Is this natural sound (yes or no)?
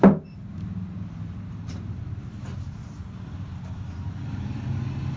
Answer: yes